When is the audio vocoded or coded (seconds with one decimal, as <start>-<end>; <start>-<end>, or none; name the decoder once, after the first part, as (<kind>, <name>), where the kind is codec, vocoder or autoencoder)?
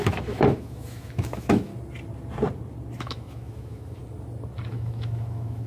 0.0-1.7 (autoencoder, DAC-VAE); 3.0-4.0; 4.7-5.7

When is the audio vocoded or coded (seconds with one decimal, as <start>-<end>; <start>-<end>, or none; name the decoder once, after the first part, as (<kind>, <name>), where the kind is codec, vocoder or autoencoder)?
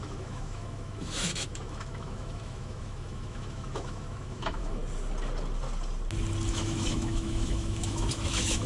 0.0-4.8 (autoencoder, DAC-VAE); 6.5-8.7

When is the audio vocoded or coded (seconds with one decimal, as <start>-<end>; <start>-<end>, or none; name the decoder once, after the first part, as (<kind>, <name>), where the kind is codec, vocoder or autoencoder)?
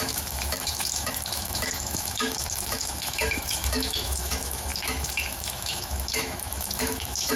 0.0-7.4 (autoencoder, DAC-VAE)